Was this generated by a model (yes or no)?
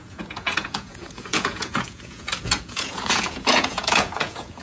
yes